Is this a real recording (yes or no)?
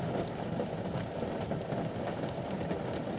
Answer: yes